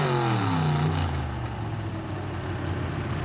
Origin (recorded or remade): recorded